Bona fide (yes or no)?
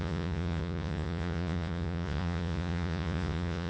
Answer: no